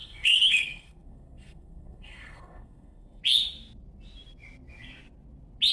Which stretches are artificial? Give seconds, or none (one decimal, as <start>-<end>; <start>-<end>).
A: 0.0-3.2